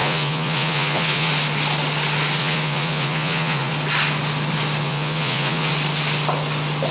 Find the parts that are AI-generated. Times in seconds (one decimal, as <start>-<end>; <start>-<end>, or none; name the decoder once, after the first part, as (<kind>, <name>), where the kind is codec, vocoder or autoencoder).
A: 0.0-1.3 (vocoder, Vocos); 2.4-3.7; 4.8-5.7